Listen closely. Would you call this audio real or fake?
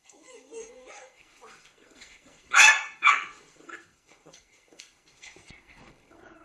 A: fake